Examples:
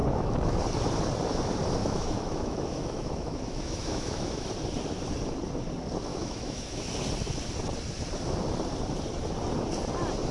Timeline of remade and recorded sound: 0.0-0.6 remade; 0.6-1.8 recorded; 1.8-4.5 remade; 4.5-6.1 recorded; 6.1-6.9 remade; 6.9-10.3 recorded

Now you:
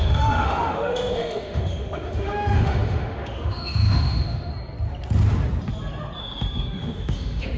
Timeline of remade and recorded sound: 0.0-4.5 remade; 4.5-6.2 recorded; 6.2-7.6 remade

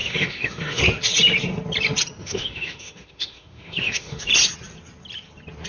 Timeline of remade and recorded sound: 0.0-0.8 remade; 0.8-2.2 recorded; 2.2-4.3 remade; 4.3-5.7 recorded

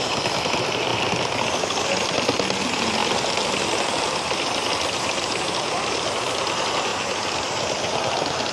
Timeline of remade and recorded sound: 0.0-8.5 recorded

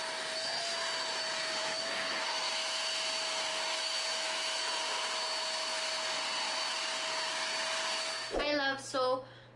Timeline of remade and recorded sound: 0.0-1.6 recorded; 1.6-2.5 remade; 2.5-3.5 recorded; 3.5-4.7 remade; 4.7-9.6 recorded